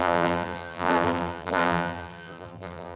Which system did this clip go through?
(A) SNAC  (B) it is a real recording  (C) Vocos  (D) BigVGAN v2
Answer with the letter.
D